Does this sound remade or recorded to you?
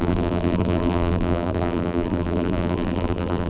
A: remade